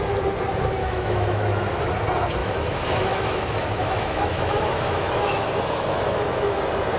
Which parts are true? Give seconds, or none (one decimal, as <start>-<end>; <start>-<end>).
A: 0.0-0.8; 1.9-2.4; 6.6-7.0